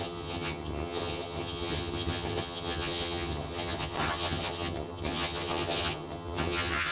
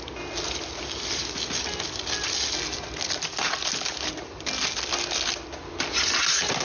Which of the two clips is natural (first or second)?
second